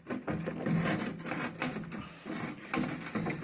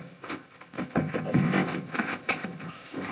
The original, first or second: first